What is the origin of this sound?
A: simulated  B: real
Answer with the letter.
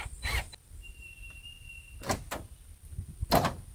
B